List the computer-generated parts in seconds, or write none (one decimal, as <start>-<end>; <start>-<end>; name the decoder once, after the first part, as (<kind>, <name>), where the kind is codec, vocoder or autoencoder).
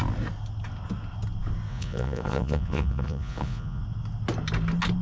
1.7-3.8 (vocoder, Vocos)